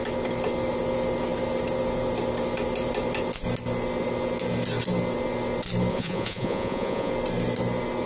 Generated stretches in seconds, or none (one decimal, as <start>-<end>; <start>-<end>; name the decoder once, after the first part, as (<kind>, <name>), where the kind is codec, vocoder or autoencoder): 5.9-7.1 (vocoder, Vocos)